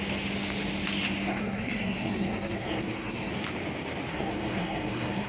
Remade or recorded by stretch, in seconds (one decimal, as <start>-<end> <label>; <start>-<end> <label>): 0.0-1.4 recorded; 1.4-3.3 remade; 3.3-4.1 recorded; 4.1-5.3 remade